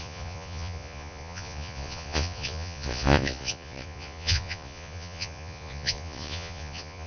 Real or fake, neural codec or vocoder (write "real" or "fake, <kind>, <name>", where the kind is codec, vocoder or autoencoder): fake, vocoder, Vocos